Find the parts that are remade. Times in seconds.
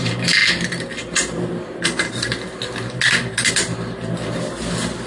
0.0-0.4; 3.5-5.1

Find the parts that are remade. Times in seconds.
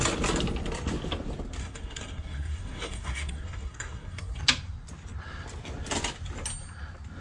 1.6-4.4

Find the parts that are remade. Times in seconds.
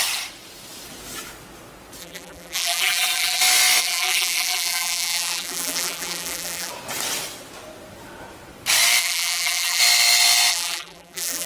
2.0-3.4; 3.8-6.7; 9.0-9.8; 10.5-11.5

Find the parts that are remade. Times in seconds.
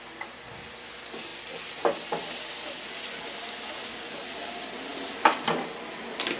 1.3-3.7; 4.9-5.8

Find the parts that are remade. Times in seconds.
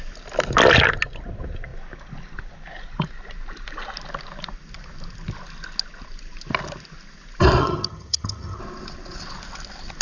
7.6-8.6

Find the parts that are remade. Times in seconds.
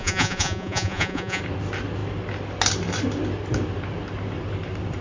0.0-1.4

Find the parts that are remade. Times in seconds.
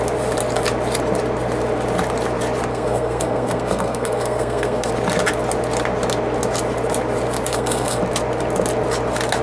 2.7-4.9; 7.5-8.0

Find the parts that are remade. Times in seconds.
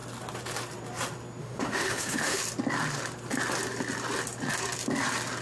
1.4-2.4